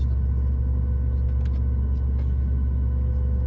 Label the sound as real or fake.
real